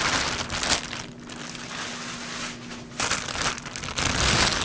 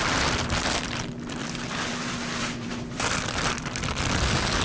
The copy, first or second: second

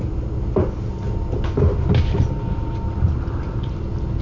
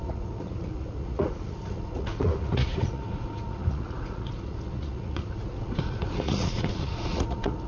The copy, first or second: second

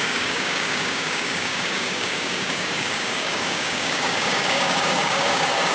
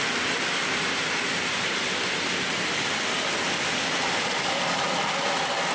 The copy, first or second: first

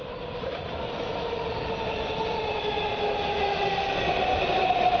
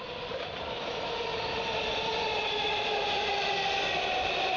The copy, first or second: second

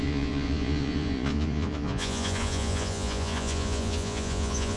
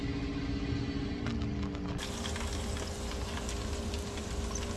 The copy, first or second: first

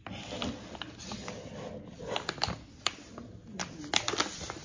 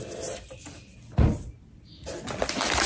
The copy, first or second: second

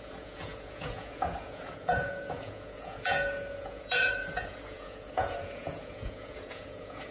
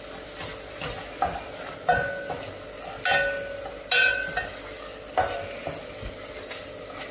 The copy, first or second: first